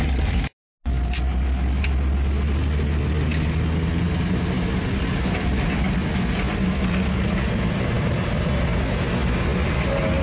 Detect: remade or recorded recorded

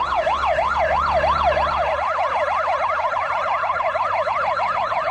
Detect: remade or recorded recorded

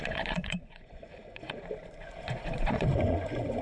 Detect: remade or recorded remade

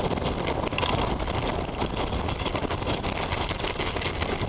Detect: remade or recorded recorded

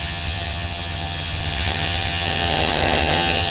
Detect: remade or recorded remade